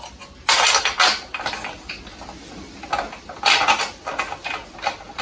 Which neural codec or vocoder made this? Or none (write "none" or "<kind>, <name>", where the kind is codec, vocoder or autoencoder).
none